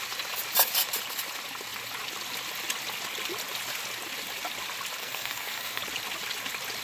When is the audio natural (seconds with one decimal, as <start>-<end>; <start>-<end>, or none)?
0.0-5.0; 5.8-6.8